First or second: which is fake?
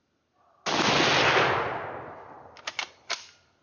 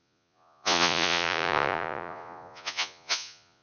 second